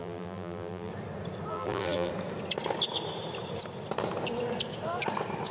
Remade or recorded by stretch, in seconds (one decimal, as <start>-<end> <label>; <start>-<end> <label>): 0.0-0.9 remade; 0.9-1.5 recorded; 1.5-2.1 remade; 2.1-5.5 recorded